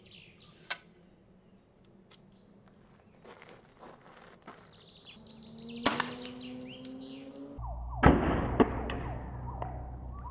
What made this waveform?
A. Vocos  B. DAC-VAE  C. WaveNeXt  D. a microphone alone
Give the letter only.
D